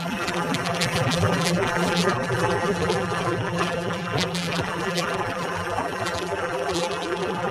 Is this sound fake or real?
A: fake